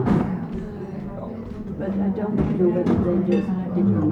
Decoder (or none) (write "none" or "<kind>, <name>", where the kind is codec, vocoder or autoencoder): none